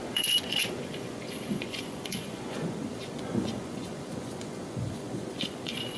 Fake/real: fake